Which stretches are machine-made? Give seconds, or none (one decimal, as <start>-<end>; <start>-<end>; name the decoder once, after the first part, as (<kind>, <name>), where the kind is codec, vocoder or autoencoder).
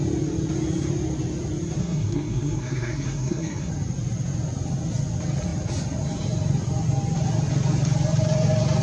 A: 1.8-3.7 (codec, SNAC)